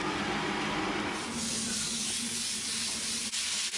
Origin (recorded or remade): recorded